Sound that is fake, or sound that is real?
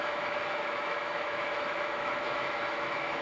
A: fake